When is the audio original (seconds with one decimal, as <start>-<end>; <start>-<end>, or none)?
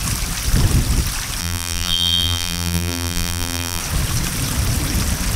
0.0-1.4; 3.8-5.4